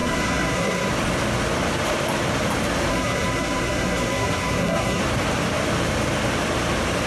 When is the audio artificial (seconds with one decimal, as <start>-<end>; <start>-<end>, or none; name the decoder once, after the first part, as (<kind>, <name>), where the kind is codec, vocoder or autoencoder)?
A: 0.0-0.9 (codec, SNAC); 2.9-5.0